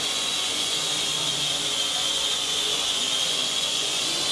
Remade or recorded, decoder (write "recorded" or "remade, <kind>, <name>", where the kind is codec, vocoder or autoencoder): remade, vocoder, Vocos